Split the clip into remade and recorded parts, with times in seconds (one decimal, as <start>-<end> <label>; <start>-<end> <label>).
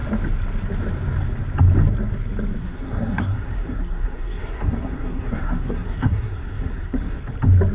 0.0-2.6 recorded; 2.6-7.2 remade; 7.2-7.7 recorded